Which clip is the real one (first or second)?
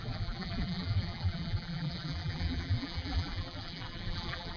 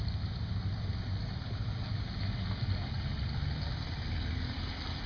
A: second